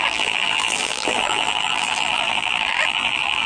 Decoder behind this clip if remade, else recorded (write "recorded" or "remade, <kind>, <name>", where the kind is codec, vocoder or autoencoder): remade, vocoder, BigVGAN v2